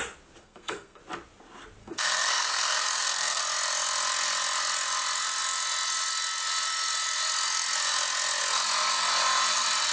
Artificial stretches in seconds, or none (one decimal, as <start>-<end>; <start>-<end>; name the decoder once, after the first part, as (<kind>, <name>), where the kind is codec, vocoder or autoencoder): 0.4-1.0 (codec, SNAC); 1.8-3.4